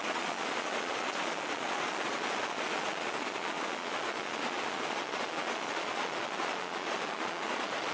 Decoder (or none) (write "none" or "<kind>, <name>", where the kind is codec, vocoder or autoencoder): vocoder, Vocos